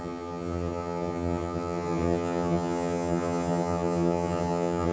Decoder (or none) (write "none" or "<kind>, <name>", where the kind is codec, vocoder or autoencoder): vocoder, HiFi-GAN